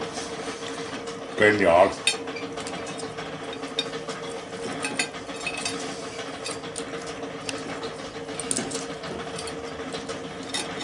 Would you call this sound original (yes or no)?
yes